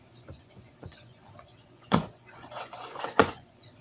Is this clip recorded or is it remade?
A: remade